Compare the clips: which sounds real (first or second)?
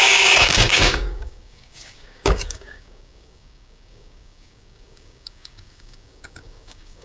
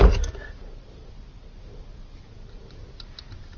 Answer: second